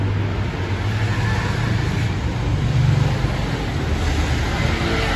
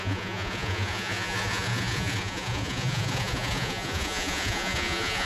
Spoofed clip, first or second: second